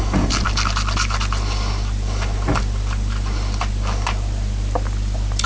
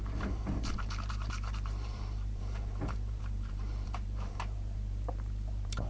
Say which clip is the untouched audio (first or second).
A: first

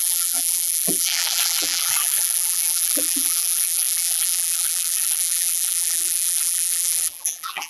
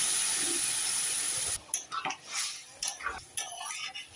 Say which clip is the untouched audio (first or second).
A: second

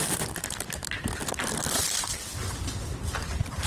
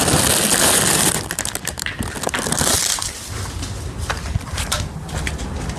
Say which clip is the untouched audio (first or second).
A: second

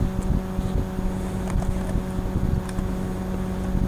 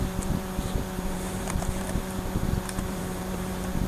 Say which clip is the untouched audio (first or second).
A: first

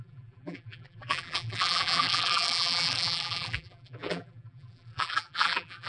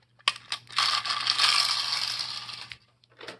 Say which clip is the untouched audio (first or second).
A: second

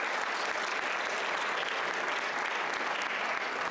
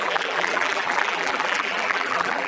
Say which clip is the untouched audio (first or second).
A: first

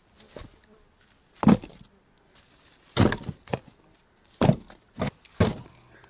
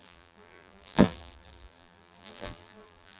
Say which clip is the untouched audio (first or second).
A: first